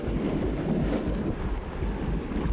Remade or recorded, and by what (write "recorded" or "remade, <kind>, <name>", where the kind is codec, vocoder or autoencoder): recorded